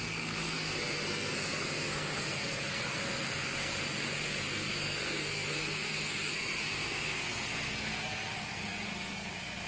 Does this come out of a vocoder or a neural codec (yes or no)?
yes